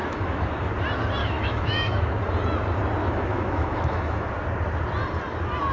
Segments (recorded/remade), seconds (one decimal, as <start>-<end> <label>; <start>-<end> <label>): 0.0-0.7 remade; 0.7-1.2 recorded; 1.2-2.1 remade; 2.1-3.0 recorded; 3.0-4.3 remade; 4.3-5.7 recorded